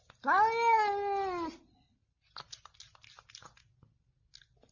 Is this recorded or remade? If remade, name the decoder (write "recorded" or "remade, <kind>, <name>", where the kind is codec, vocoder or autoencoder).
recorded